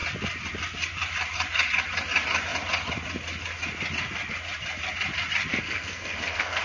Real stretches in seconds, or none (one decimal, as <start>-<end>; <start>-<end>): 0.0-5.5